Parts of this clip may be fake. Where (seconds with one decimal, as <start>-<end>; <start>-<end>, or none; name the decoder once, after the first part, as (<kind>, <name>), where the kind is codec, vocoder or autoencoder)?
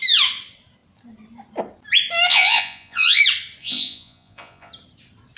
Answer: 2.3-3.2 (vocoder, Vocos); 3.6-4.7